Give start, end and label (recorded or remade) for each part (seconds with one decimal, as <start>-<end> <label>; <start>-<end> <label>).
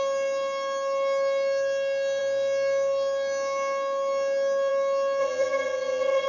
0.0-5.2 recorded; 5.2-6.3 remade